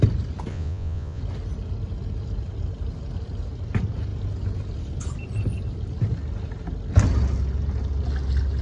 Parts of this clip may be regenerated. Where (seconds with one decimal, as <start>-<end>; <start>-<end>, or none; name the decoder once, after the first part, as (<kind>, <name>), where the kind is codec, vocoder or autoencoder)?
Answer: 0.5-1.2 (vocoder, Vocos)